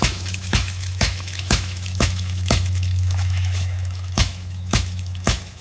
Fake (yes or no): yes